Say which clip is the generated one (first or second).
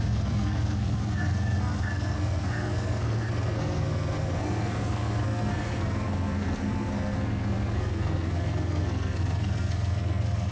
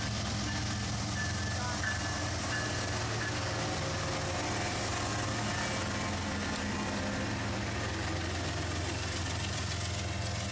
first